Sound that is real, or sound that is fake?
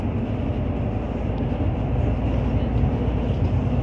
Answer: real